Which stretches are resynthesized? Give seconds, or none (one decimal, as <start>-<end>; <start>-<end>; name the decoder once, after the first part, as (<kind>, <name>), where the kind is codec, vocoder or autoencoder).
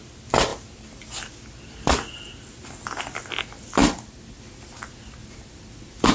3.8-4.4 (vocoder, BigVGAN v2); 5.2-6.1